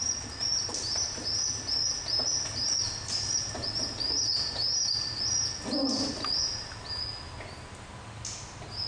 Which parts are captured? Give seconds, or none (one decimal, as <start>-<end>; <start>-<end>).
0.0-8.9